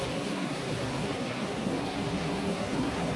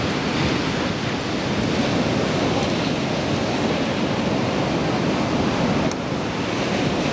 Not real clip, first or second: first